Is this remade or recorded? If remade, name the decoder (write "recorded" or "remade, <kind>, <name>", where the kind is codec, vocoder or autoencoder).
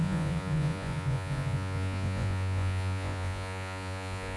remade, vocoder, Vocos